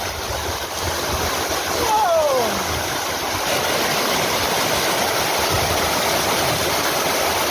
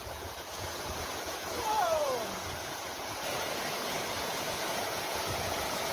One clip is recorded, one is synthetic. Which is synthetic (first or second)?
second